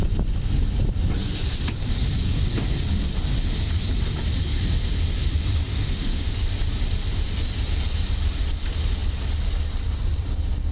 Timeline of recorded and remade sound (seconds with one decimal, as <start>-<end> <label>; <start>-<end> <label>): 0.0-5.7 recorded; 5.7-6.5 remade; 6.5-10.7 recorded